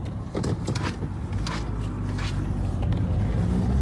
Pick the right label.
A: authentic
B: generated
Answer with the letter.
A